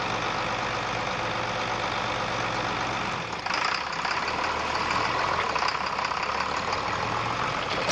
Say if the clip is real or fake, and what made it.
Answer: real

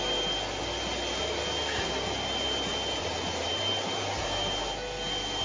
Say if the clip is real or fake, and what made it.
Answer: real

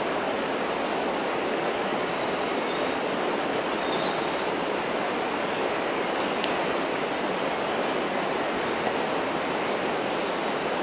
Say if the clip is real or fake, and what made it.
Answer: real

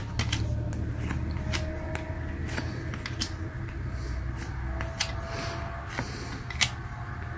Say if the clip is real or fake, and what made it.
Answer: real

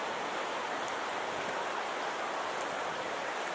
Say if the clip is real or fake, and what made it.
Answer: real